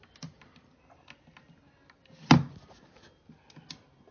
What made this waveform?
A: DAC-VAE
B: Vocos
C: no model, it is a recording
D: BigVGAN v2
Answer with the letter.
C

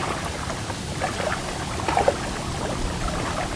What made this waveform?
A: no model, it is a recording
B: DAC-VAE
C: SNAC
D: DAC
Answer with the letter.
A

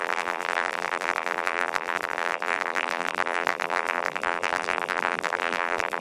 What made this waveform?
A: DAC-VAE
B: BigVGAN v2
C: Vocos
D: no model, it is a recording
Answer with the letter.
B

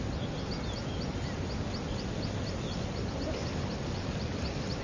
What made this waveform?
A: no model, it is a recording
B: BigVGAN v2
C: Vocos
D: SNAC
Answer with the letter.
A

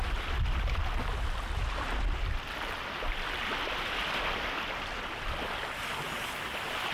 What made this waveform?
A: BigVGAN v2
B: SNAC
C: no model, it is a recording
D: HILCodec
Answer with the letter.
C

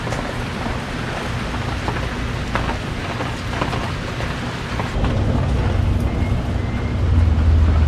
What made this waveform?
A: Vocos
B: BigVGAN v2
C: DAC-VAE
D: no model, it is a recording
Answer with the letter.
D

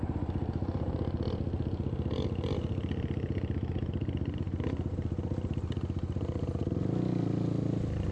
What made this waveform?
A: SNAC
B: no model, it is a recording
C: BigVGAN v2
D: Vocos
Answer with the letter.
B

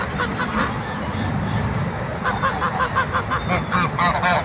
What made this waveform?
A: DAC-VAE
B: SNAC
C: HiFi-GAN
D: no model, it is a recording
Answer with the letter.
D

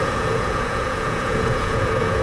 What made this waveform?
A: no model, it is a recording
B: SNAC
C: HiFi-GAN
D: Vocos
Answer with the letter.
D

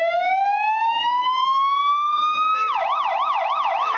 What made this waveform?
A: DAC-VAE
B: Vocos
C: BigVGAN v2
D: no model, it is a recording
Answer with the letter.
A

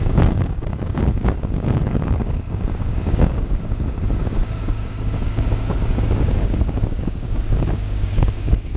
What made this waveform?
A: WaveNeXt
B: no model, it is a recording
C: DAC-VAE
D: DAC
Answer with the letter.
D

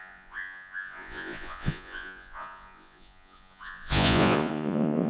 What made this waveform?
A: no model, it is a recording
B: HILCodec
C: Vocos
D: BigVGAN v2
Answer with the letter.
C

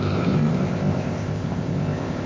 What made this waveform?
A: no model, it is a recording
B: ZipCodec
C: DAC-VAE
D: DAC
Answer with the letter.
B